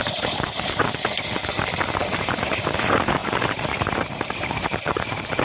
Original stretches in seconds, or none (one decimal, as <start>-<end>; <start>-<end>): 0.8-2.0